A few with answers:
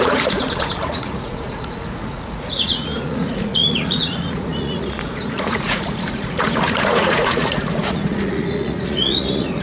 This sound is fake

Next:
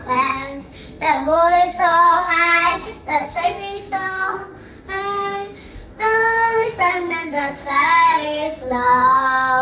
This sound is fake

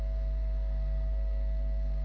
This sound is fake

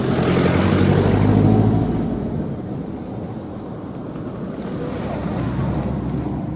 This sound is real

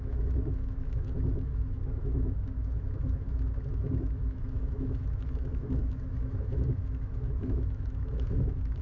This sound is fake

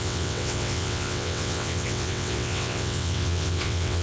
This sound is fake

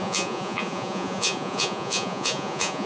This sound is fake